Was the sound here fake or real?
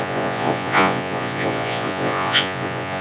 fake